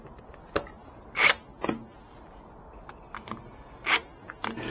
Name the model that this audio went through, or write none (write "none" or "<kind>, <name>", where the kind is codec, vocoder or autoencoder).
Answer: none